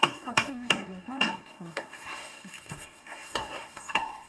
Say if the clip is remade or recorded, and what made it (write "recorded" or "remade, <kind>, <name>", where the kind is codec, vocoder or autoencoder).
remade, codec, SNAC